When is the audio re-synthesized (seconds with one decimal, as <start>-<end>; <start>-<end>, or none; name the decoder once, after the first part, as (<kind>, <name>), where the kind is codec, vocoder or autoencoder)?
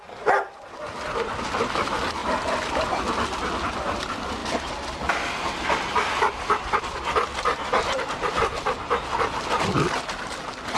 2.2-3.0 (vocoder, BigVGAN v2)